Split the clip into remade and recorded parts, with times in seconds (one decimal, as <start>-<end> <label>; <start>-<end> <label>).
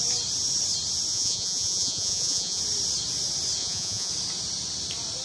0.0-1.1 recorded; 1.1-2.6 remade; 2.6-3.6 recorded; 3.6-4.1 remade; 4.1-5.2 recorded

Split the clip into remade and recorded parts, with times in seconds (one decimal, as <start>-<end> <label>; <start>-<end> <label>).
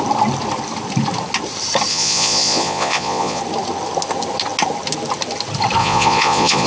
0.0-1.9 recorded; 1.9-3.4 remade; 3.4-5.8 recorded; 5.8-6.7 remade